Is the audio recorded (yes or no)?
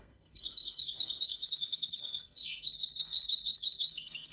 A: no